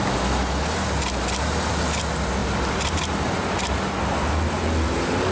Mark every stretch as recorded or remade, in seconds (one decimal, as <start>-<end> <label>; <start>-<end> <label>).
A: 0.0-5.3 recorded